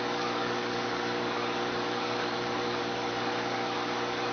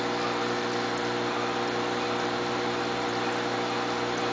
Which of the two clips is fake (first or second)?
first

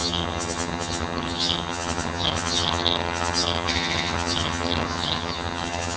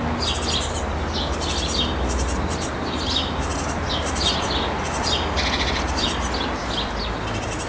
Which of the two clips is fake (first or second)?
first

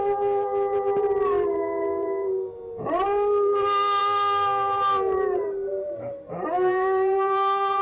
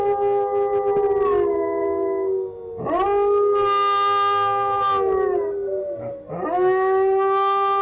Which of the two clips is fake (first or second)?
first